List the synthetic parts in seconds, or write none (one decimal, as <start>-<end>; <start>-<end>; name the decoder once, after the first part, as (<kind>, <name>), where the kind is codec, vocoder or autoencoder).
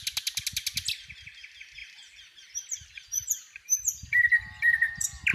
1.8-5.3 (vocoder, BigVGAN v2)